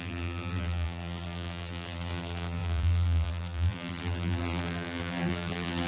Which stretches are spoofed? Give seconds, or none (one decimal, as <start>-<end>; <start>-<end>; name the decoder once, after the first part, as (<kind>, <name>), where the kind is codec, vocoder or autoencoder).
0.0-5.9 (vocoder, BigVGAN v2)